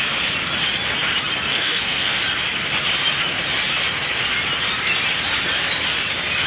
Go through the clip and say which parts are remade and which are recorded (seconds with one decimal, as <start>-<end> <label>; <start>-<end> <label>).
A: 0.0-1.5 recorded; 1.5-2.2 remade; 2.2-6.5 recorded